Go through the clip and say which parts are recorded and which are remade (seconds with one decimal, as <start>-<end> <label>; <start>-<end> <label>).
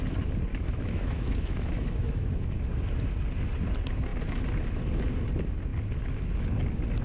0.0-0.5 recorded; 0.5-2.5 remade; 2.5-7.0 recorded